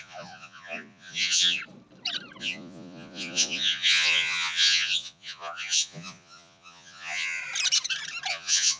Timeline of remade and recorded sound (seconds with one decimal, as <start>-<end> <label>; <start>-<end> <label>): 0.0-1.6 remade; 1.6-2.4 recorded; 2.4-7.4 remade; 7.4-8.3 recorded; 8.3-8.8 remade